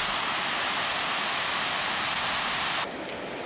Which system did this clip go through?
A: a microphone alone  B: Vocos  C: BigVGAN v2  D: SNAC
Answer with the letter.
A